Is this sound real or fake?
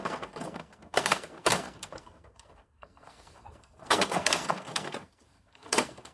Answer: fake